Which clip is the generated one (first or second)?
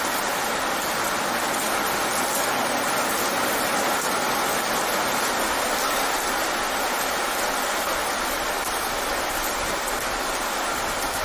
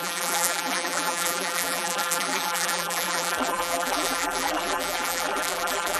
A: second